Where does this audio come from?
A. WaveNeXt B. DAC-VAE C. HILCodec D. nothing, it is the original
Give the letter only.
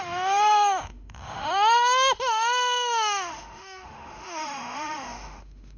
B